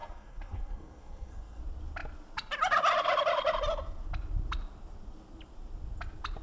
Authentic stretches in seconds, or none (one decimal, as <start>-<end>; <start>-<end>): 1.6-6.4